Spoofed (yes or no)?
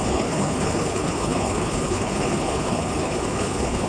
yes